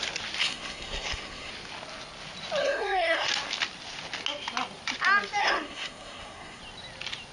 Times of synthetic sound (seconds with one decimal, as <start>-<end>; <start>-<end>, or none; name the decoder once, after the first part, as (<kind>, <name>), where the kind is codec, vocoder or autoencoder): 0.4-1.5 (codec, SNAC); 2.6-3.3; 5.4-6.6

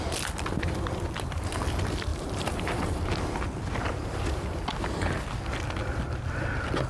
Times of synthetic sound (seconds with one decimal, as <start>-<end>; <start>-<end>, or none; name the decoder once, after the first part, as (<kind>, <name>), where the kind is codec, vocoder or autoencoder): 2.1-3.1 (vocoder, BigVGAN v2)

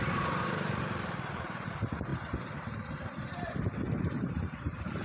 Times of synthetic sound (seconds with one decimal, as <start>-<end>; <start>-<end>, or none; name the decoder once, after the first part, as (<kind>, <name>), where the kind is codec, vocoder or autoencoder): 0.0-5.0 (vocoder, BigVGAN v2)

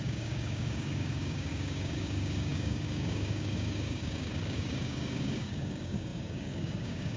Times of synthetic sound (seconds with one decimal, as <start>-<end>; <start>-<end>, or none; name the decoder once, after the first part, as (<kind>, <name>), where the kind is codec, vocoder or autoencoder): 0.0-7.2 (codec, DAC)

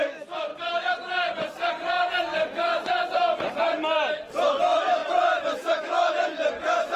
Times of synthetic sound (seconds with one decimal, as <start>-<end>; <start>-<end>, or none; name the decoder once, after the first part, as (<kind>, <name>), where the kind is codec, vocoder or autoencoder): 0.0-0.5 (autoencoder, DAC-VAE); 2.2-2.7; 4.5-7.0

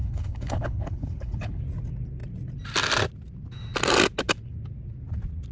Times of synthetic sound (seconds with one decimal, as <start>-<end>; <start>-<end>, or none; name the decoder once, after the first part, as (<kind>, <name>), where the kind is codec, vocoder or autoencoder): 0.0-1.6 (codec, HILCodec)

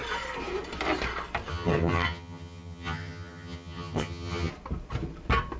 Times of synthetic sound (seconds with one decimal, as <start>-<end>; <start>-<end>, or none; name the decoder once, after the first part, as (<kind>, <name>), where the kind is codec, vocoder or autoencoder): 1.5-4.5 (vocoder, HiFi-GAN)